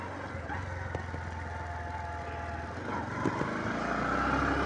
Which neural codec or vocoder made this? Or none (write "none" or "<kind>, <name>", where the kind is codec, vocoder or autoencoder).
none